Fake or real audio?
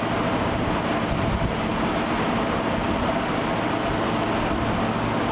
real